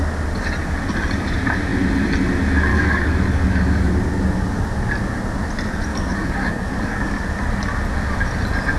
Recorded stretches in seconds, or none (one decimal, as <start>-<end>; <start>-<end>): 0.0-2.7; 3.9-5.9; 7.2-8.8